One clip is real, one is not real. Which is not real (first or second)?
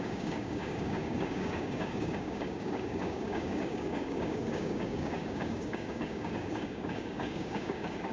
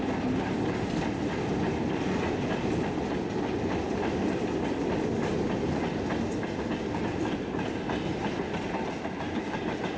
first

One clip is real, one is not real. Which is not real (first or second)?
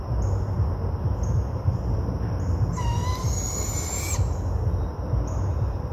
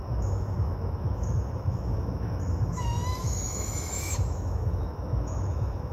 second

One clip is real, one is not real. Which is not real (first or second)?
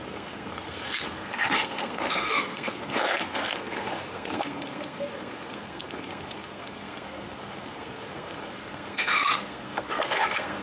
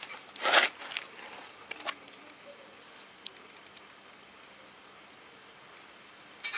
first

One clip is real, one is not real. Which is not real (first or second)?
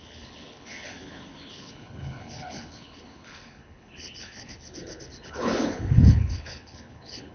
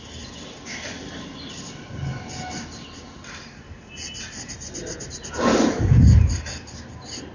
first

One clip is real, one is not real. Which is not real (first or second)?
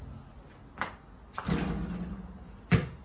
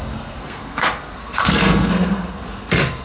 second